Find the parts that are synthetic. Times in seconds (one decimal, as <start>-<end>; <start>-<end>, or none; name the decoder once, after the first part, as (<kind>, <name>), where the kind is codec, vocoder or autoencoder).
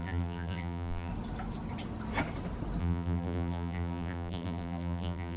0.0-1.1 (vocoder, BigVGAN v2); 2.8-5.4